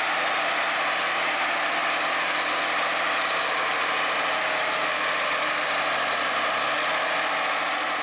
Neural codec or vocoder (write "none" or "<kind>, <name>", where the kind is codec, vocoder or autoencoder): none